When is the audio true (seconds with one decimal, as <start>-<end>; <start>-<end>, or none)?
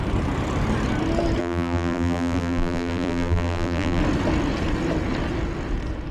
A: 0.0-1.4; 4.0-6.1